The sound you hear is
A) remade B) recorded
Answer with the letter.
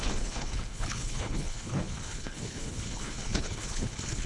A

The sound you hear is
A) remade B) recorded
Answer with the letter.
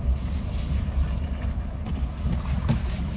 B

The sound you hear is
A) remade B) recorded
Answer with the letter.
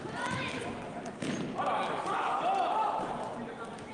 B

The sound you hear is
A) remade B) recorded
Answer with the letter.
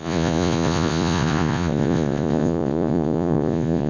A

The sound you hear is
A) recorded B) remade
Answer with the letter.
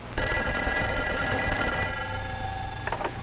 A